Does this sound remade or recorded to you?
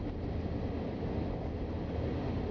recorded